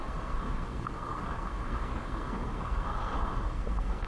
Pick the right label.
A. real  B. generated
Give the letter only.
B